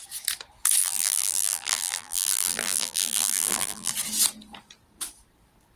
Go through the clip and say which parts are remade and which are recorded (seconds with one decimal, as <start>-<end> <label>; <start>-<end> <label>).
0.0-0.8 recorded; 0.8-3.9 remade; 3.9-5.8 recorded